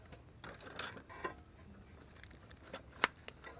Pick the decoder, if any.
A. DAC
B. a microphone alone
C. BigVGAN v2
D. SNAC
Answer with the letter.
B